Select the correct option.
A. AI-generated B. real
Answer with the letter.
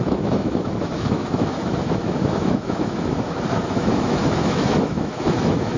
A